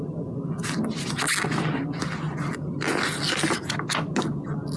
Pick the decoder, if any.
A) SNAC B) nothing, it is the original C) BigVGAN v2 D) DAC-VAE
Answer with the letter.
B